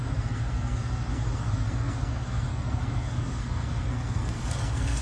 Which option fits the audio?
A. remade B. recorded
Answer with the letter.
A